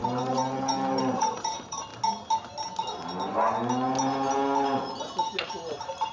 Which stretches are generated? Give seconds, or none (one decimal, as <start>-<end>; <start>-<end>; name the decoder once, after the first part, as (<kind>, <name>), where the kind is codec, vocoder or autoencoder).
0.0-1.9 (vocoder, BigVGAN v2); 5.5-6.1